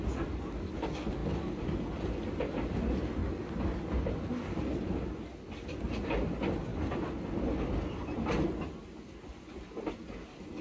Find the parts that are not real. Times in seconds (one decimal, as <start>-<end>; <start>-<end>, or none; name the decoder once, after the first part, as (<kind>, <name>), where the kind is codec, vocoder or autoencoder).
none